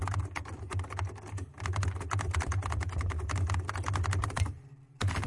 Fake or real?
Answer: real